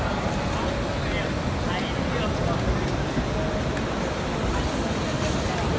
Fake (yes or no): no